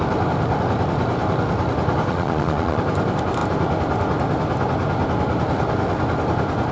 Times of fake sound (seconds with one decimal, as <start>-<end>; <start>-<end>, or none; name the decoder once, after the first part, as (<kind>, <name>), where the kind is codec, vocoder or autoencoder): 2.1-2.8 (vocoder, Vocos)